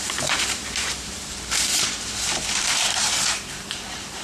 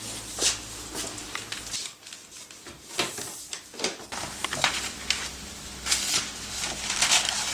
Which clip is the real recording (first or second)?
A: second